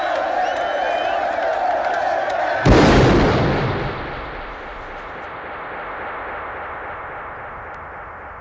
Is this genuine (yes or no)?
yes